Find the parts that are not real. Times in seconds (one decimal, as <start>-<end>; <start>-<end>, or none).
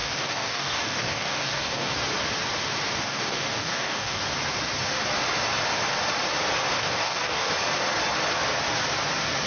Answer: 0.0-1.9; 3.0-4.2; 6.8-7.5